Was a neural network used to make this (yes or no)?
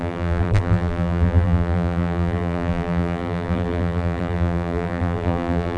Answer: yes